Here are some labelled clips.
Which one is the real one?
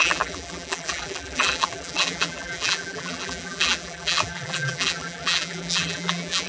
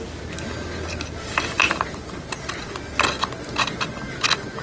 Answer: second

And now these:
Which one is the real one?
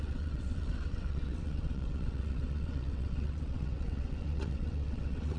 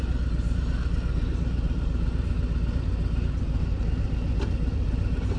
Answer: second